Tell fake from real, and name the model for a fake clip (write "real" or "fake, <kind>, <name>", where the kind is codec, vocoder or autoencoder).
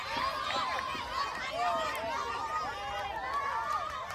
real